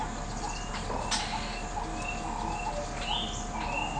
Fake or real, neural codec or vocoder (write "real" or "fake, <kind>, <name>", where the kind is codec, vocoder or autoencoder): real